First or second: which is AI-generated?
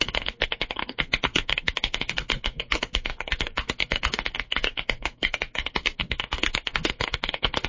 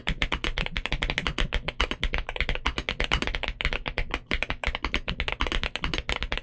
first